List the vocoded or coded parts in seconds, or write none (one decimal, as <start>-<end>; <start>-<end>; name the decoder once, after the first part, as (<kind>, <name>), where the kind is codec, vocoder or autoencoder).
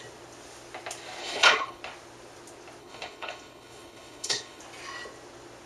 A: 1.2-1.8 (codec, HILCodec); 2.8-4.6